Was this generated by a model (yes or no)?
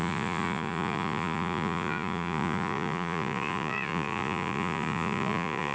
yes